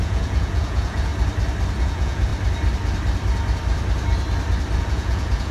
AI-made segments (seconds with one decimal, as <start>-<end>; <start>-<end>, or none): 0.0-1.1; 1.8-2.3; 4.8-5.5